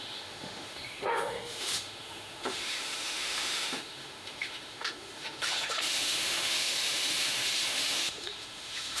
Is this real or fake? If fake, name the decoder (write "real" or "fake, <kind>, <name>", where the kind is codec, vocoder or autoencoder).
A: fake, autoencoder, DAC-VAE